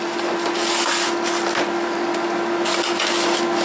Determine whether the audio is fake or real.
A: real